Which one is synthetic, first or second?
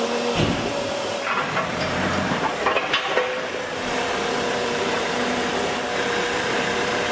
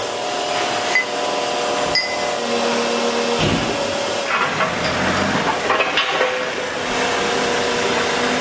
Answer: first